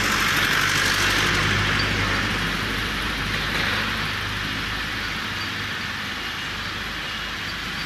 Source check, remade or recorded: recorded